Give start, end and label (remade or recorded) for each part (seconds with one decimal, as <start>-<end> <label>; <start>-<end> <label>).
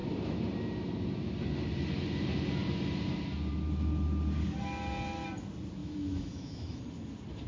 0.0-5.8 recorded; 5.8-6.8 remade; 6.8-7.5 recorded